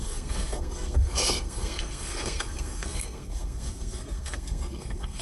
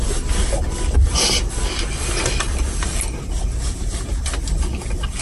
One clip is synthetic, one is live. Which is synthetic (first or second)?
first